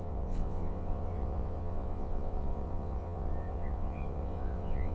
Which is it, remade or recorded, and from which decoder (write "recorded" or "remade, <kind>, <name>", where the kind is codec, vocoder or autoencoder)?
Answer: remade, vocoder, WaveNeXt